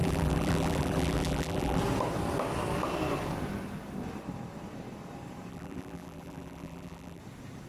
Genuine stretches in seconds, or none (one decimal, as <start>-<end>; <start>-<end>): 1.8-5.5; 7.2-7.7

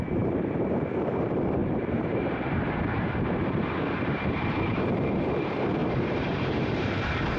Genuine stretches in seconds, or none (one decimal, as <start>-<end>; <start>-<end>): none